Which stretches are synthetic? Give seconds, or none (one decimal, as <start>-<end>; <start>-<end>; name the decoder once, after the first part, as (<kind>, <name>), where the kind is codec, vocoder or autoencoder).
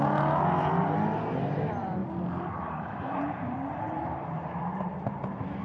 2.0-4.6 (vocoder, BigVGAN v2)